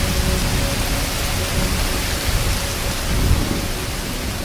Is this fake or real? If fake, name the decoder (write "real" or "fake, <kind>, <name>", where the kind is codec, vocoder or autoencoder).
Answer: real